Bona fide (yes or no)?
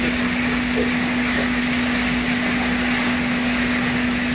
yes